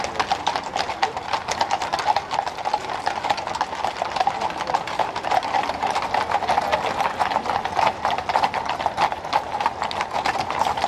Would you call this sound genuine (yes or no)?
yes